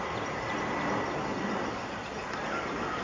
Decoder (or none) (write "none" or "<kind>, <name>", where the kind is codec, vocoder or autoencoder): none